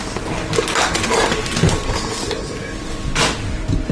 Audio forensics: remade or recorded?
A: recorded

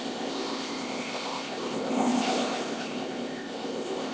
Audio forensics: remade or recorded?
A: remade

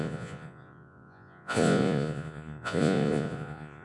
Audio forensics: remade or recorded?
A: remade